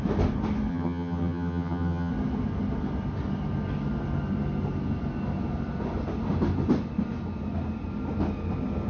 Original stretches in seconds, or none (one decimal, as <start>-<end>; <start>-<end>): 0.0-0.7; 2.1-8.9